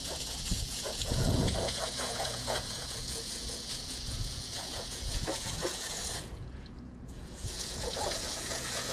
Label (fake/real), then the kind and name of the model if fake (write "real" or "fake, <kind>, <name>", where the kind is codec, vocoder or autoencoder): fake, vocoder, Vocos